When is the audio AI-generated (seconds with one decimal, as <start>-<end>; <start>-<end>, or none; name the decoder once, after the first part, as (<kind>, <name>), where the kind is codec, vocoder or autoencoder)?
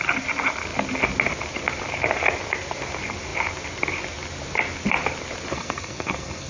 5.5-6.5 (codec, SNAC)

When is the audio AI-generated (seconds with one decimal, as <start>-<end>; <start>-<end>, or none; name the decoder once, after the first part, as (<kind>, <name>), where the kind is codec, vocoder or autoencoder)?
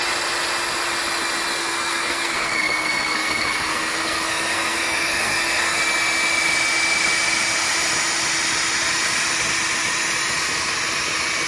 1.6-5.8 (codec, SNAC)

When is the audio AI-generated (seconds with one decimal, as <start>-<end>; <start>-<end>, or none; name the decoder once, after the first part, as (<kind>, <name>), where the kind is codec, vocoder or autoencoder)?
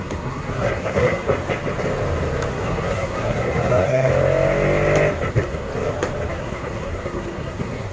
0.0-1.3 (codec, SNAC); 2.5-4.1; 5.3-5.7; 6.3-7.9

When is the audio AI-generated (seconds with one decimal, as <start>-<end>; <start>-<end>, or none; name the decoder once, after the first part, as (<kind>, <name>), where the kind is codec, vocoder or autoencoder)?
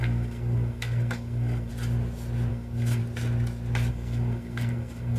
0.0-1.7 (codec, SNAC); 2.5-3.0; 3.9-5.2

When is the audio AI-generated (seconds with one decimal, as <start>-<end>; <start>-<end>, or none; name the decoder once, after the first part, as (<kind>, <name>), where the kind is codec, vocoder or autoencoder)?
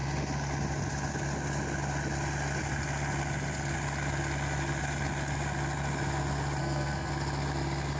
6.6-7.1 (codec, SNAC)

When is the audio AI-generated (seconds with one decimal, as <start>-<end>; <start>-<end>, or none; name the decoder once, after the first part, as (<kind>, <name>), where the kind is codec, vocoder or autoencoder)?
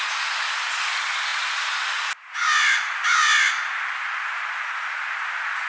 none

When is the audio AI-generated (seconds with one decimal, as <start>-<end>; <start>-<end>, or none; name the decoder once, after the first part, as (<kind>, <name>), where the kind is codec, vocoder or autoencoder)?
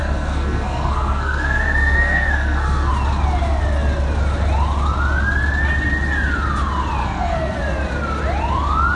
0.0-2.9 (codec, SNAC); 7.0-7.6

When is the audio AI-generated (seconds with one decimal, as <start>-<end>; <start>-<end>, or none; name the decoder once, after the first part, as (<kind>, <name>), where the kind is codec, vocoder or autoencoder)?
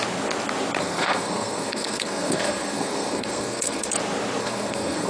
0.8-3.9 (codec, SNAC); 4.4-5.1